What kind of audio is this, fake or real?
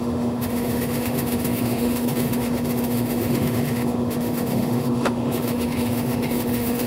fake